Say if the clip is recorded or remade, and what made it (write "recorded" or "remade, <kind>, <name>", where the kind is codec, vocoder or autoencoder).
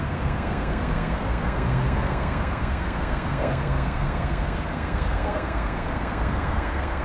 remade, codec, SNAC